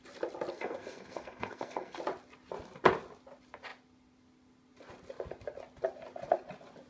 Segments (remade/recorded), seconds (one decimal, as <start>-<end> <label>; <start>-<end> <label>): 0.0-0.5 recorded; 0.5-2.0 remade; 2.0-6.9 recorded